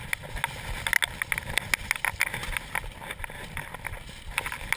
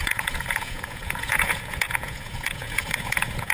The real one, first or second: first